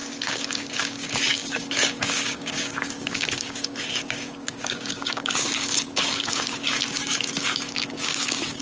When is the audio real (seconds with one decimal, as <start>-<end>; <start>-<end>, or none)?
none